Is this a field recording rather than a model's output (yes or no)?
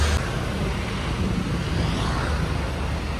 yes